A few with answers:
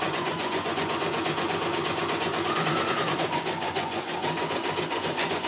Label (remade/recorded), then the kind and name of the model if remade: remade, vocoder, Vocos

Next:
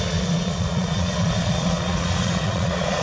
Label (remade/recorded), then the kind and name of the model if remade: remade, vocoder, Vocos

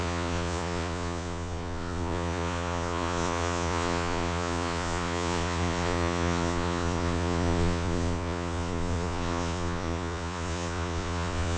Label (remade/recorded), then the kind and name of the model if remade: remade, vocoder, Vocos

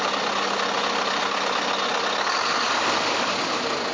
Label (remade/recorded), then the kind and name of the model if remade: recorded